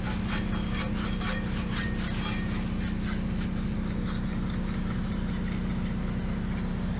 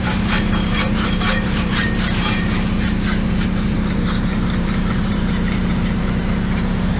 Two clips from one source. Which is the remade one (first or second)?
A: second